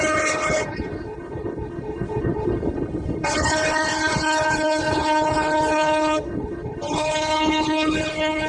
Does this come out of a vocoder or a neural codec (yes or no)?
yes